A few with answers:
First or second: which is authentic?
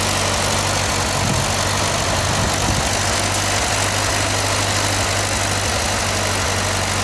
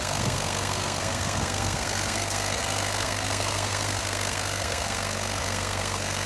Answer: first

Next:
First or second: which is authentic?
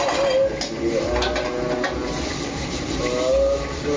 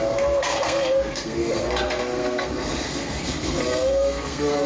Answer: first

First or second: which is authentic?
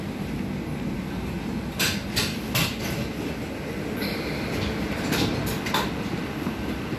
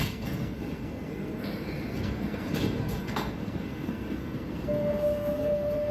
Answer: first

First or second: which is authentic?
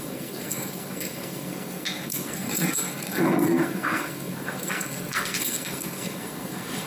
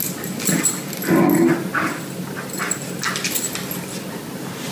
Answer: second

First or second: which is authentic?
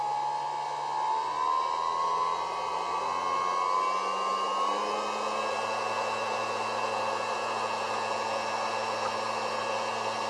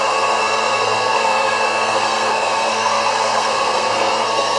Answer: first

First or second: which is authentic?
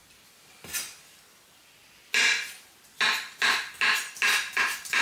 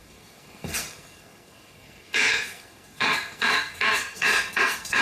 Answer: first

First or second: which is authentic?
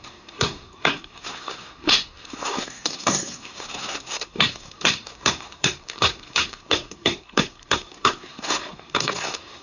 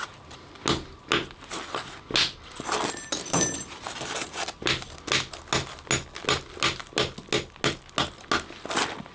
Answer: second